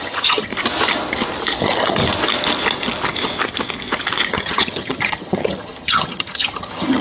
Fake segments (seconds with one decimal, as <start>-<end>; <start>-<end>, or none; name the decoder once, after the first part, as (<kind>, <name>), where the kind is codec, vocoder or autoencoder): 0.0-0.5 (vocoder, HiFi-GAN); 1.6-2.0; 4.3-7.0